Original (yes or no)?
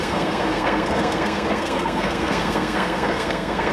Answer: no